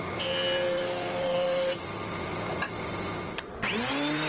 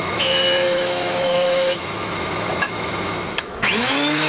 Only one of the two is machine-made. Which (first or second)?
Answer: second